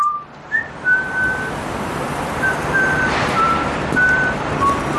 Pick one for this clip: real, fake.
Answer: real